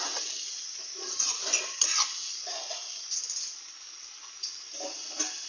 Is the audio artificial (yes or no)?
no